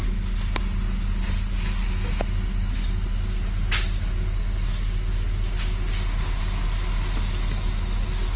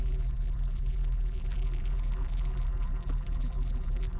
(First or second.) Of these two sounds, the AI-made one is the second